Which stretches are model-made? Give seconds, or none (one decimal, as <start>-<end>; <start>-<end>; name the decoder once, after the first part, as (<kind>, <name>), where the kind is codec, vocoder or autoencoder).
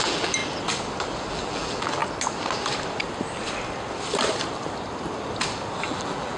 0.0-0.4 (vocoder, BigVGAN v2); 1.3-2.0; 5.8-6.4